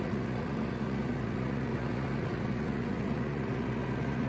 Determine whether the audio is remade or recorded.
remade